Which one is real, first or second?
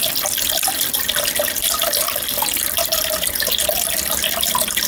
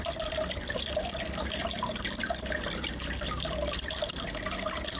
second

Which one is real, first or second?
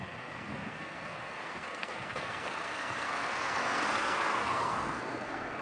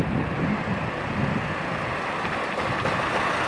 second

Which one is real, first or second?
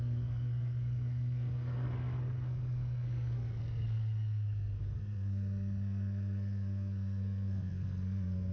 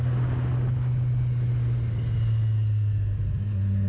second